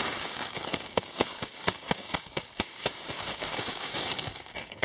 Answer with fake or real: fake